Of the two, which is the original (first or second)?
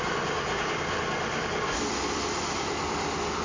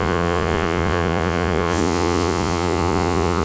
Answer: first